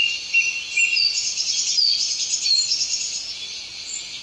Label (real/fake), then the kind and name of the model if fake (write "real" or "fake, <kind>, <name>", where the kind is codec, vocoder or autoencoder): real